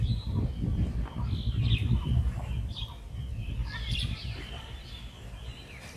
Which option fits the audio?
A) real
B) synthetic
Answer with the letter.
B